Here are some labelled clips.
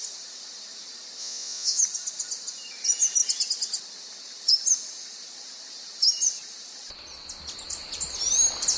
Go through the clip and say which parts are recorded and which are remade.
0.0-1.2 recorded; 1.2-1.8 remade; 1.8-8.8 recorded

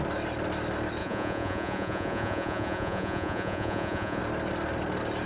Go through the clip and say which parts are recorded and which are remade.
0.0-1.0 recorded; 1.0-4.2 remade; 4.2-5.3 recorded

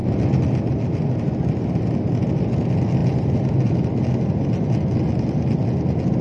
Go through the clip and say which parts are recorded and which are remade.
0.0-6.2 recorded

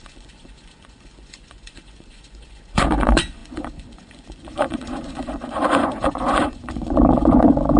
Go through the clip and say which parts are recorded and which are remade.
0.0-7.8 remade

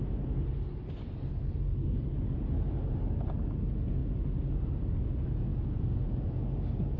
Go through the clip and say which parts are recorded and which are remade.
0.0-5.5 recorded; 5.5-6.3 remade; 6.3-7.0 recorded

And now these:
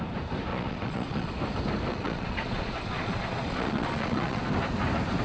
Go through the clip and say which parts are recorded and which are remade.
0.0-0.5 recorded; 0.5-1.3 remade; 1.3-1.9 recorded; 1.9-4.4 remade; 4.4-5.2 recorded

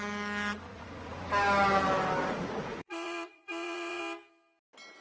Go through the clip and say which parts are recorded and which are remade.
0.0-0.7 recorded; 0.7-1.3 remade; 1.3-2.2 recorded; 2.2-4.0 remade; 4.0-5.0 recorded